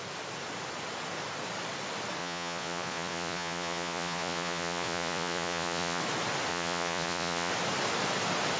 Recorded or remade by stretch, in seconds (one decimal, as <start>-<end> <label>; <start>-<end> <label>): 0.0-2.2 recorded; 2.2-6.0 remade; 6.0-6.5 recorded; 6.5-7.5 remade; 7.5-8.6 recorded